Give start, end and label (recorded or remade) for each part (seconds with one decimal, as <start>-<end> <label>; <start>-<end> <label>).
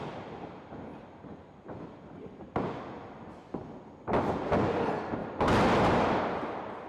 0.0-6.9 recorded